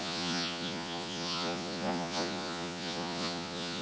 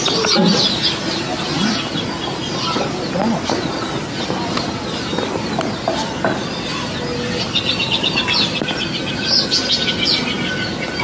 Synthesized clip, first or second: first